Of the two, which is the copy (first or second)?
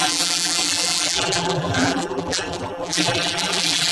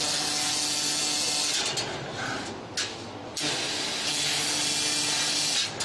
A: first